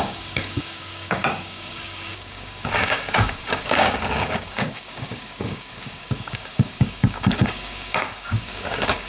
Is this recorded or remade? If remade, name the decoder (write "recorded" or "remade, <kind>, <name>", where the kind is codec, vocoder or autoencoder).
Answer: remade, codec, DAC